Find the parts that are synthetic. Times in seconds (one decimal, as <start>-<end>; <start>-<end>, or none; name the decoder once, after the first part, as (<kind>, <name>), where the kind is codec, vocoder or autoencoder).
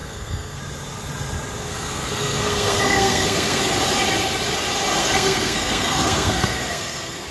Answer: 0.0-0.6 (codec, SNAC); 1.6-3.6; 5.0-7.3